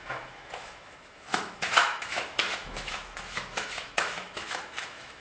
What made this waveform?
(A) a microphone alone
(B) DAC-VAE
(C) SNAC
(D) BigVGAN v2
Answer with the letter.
B